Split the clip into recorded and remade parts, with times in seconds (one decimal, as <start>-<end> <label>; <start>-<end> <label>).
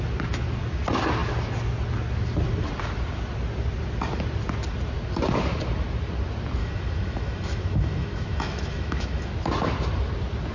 0.0-6.6 recorded; 6.6-9.3 remade; 9.3-10.5 recorded